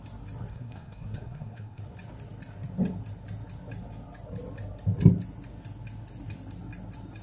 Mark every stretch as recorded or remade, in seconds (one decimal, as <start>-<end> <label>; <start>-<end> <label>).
0.0-0.5 recorded; 0.5-1.8 remade; 1.8-7.2 recorded